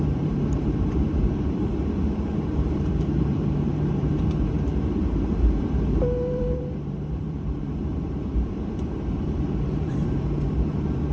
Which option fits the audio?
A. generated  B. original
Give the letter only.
A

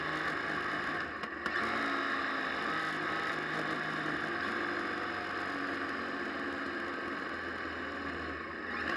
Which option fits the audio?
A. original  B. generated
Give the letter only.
A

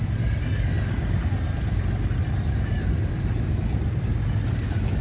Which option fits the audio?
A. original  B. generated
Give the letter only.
A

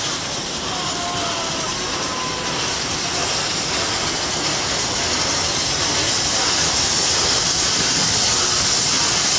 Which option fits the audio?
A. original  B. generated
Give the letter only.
A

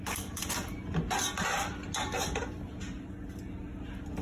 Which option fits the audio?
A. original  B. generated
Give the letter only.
A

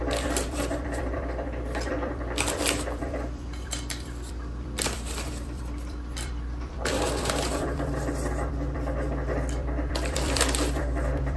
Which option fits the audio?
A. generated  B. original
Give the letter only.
A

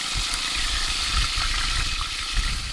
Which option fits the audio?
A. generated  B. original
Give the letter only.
B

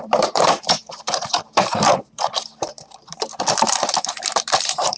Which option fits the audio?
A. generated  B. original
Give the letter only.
A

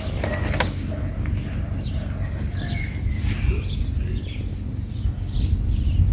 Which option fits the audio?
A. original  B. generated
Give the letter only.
A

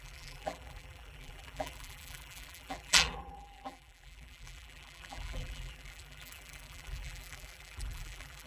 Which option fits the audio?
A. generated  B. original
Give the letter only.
A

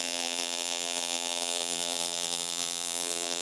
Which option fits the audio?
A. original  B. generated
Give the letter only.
B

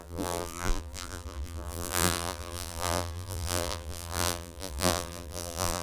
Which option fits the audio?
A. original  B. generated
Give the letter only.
B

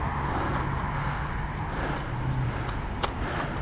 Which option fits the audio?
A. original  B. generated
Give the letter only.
A